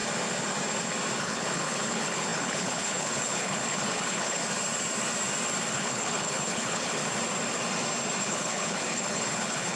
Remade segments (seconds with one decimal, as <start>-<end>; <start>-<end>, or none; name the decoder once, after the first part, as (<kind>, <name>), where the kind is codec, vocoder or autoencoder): 1.2-4.4 (codec, HILCodec); 5.7-7.0; 8.2-9.8